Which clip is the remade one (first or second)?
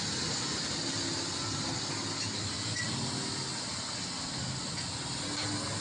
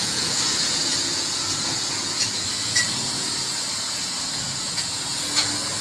second